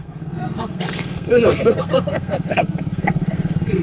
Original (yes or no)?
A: no